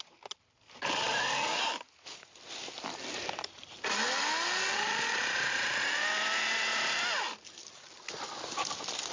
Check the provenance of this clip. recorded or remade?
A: recorded